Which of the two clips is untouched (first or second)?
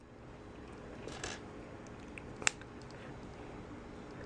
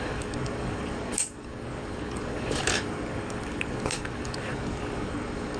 first